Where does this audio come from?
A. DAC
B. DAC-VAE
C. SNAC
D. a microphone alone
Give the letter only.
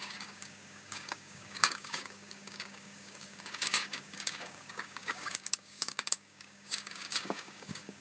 A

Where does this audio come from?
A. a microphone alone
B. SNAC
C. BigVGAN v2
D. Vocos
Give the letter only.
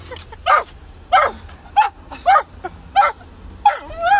A